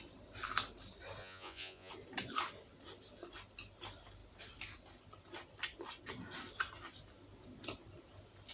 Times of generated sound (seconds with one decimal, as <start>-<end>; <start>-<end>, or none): 1.2-1.9